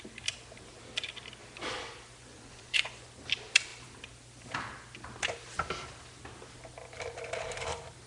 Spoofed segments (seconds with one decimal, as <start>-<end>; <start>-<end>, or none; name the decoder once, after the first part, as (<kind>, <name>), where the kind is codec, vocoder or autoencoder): 2.2-3.1 (vocoder, Vocos)